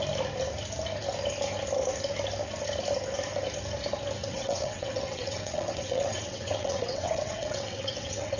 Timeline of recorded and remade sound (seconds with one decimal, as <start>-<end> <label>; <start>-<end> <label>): 0.0-4.2 recorded; 4.2-8.4 remade